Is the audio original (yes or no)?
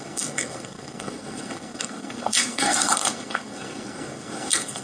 no